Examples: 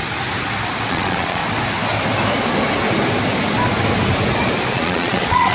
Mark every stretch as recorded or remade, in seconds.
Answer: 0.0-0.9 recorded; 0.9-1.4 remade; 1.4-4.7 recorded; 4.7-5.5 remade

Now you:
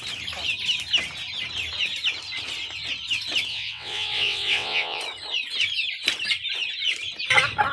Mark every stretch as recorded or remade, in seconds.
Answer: 0.0-3.5 recorded; 3.5-5.0 remade; 5.0-7.7 recorded